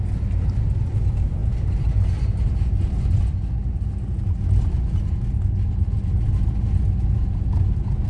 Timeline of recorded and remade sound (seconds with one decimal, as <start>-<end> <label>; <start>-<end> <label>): 0.0-8.1 recorded